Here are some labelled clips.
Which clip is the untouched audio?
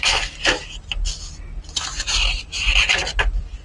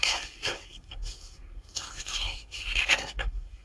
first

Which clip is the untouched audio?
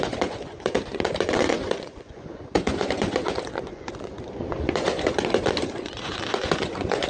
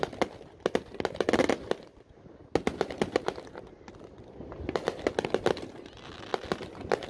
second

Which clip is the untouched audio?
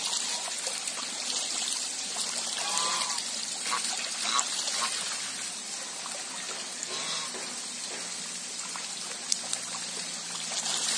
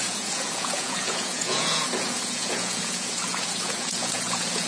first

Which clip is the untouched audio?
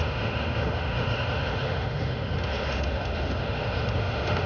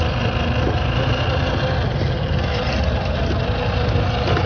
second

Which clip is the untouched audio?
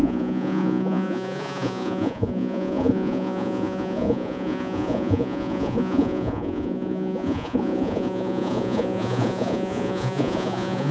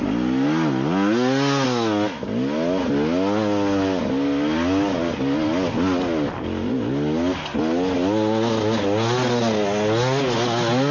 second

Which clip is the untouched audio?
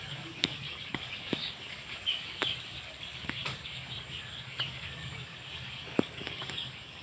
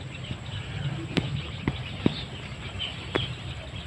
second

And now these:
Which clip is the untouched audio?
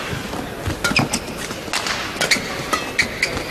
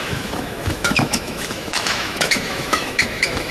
first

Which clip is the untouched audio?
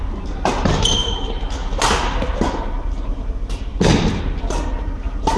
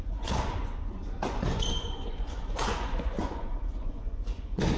first